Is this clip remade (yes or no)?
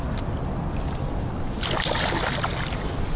no